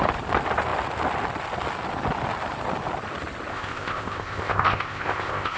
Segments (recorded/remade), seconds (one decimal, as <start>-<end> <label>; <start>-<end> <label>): 0.0-3.5 recorded; 3.5-5.6 remade